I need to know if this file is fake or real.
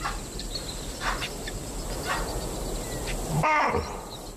fake